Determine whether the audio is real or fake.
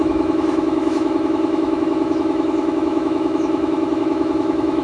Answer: fake